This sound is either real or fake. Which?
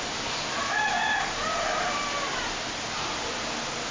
real